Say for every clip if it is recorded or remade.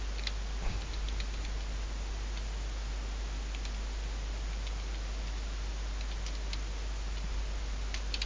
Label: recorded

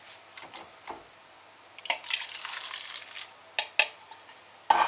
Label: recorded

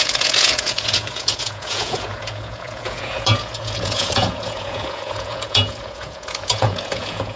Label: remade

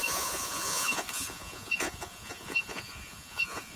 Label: remade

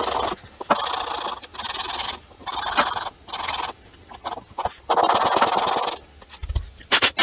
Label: recorded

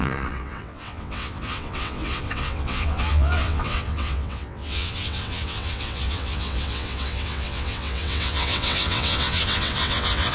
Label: remade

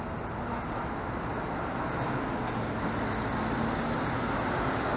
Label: recorded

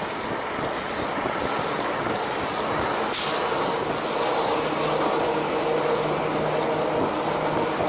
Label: recorded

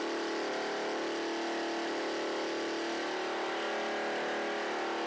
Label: recorded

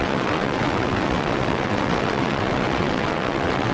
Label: remade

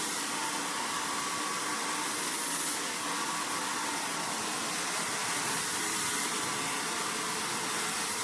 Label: recorded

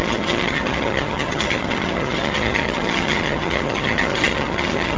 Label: remade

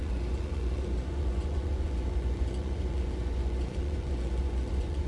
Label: remade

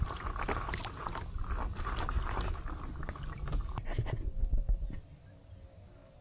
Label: recorded